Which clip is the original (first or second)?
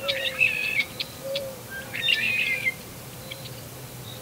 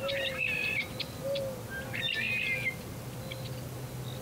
second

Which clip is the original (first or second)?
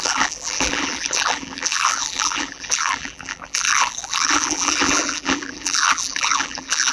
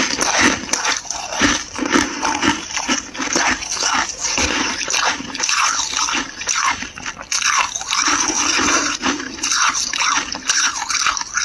second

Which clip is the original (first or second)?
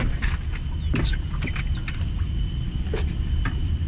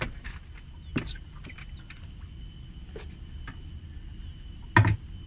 second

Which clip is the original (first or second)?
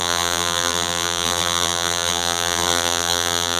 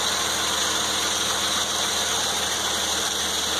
second